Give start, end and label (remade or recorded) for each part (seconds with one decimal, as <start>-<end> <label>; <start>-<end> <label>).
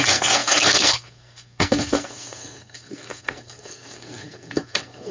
0.0-5.1 remade